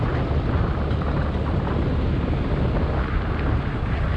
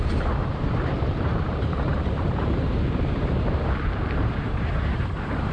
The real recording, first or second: first